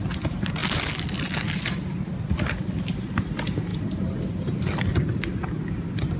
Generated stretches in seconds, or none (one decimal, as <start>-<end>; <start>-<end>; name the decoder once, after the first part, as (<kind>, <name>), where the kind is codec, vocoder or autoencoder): none